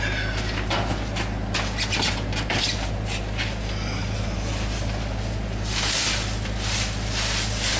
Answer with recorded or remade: recorded